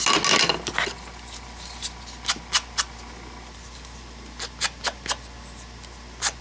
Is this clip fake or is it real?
real